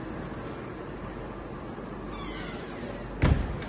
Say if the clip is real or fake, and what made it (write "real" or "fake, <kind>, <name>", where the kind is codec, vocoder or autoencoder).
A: real